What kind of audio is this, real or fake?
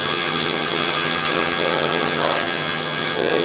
fake